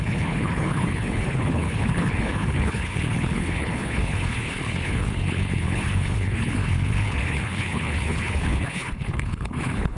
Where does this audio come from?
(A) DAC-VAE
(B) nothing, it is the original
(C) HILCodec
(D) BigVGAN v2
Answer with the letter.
C